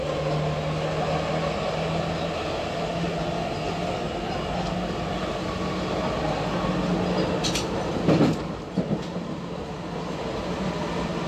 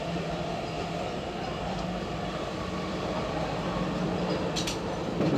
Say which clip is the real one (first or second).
first